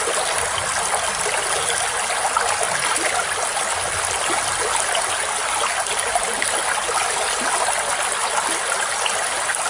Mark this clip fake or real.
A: real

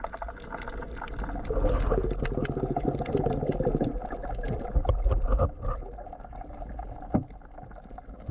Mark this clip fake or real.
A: real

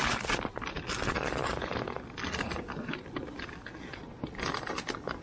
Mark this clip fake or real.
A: real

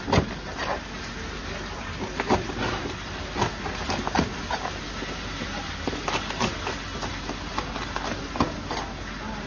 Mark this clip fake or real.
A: real